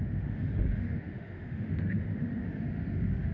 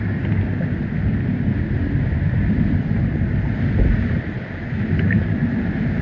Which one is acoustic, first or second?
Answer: second